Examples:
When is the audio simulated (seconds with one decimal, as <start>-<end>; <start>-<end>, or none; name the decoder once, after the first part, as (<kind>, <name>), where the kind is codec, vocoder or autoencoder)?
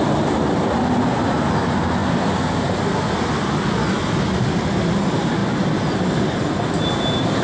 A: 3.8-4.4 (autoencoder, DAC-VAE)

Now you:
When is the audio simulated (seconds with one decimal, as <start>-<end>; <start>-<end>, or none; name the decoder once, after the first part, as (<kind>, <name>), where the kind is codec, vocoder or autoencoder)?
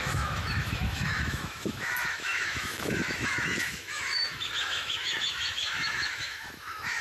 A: 0.0-7.0 (autoencoder, DAC-VAE)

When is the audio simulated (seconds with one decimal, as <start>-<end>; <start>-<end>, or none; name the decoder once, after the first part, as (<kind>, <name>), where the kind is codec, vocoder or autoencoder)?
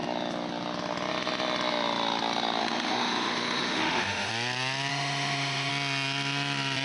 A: 2.6-4.3 (autoencoder, DAC-VAE); 4.9-5.7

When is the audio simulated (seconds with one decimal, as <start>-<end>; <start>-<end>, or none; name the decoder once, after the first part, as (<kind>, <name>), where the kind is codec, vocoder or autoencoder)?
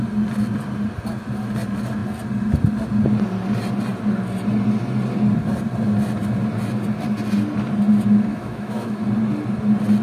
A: 8.3-9.0 (autoencoder, DAC-VAE)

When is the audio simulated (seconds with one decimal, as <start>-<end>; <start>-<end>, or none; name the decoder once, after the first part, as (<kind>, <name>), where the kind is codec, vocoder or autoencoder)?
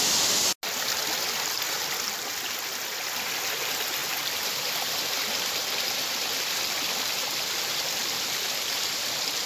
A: none